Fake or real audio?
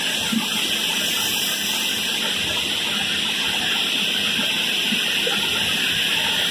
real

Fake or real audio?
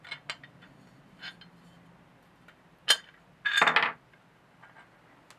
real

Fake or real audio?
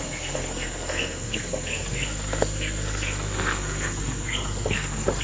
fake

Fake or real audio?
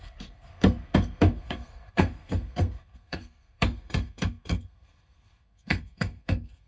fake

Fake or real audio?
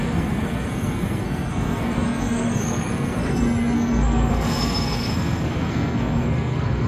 fake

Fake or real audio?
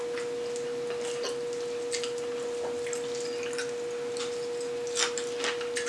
real